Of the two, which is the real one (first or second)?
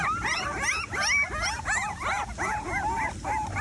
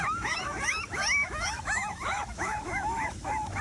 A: first